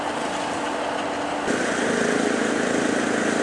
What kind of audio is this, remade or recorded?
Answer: recorded